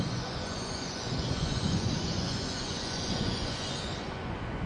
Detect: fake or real fake